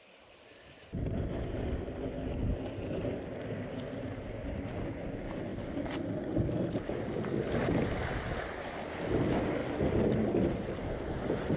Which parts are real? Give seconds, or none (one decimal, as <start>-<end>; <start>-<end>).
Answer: 0.0-11.6